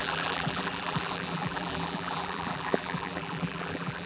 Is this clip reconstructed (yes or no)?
yes